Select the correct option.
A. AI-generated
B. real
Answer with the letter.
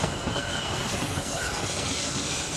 A